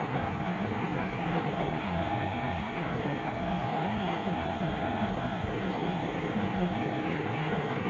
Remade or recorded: remade